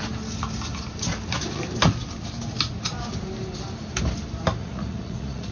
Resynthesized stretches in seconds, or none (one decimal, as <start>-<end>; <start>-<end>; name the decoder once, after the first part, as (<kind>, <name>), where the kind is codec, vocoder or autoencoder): 4.6-5.5 (vocoder, Vocos)